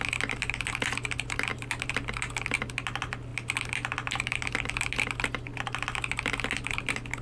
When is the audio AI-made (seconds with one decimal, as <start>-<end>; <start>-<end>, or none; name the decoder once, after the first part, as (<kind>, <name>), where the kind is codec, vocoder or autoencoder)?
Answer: none